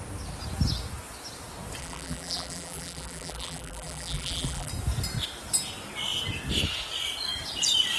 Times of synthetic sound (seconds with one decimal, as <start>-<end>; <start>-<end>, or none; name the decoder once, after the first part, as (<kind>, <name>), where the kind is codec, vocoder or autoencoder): 1.8-4.7 (vocoder, BigVGAN v2)